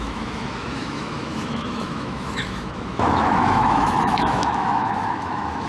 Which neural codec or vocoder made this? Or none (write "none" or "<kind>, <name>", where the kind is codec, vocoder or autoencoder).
autoencoder, DAC-VAE